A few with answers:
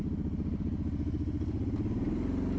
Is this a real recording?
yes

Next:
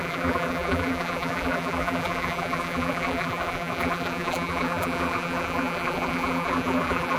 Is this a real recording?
no